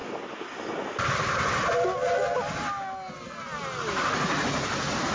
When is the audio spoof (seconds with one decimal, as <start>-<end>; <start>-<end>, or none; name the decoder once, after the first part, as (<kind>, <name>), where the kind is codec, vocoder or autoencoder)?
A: none